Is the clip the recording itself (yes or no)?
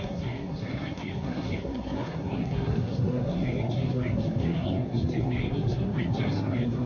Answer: no